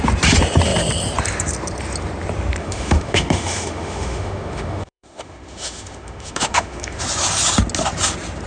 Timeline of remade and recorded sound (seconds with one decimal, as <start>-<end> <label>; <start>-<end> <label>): 0.0-2.6 recorded; 2.6-7.0 remade; 7.0-8.5 recorded